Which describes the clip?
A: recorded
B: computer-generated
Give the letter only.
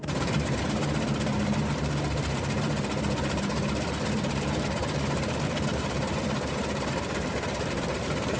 B